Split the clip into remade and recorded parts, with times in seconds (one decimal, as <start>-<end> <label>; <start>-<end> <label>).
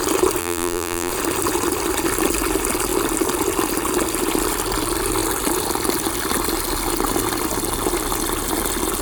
0.0-0.4 recorded; 0.4-1.1 remade; 1.1-9.0 recorded